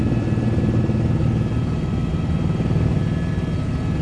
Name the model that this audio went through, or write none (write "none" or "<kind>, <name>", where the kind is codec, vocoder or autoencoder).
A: none